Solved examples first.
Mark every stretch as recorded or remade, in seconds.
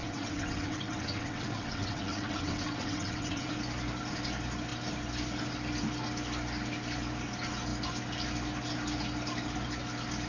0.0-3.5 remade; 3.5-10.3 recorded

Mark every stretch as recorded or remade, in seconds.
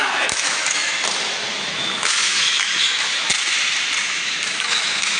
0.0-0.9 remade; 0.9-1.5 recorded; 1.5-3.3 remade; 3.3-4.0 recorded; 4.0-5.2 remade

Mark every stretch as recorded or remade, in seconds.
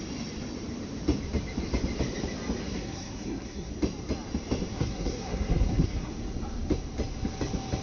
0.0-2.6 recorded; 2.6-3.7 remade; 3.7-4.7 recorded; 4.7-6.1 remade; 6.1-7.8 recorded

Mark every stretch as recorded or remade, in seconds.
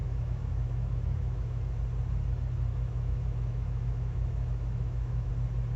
0.0-1.6 remade; 1.6-2.7 recorded; 2.7-5.3 remade; 5.3-5.8 recorded